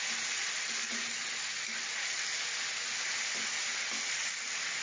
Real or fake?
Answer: real